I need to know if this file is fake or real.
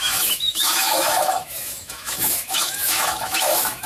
fake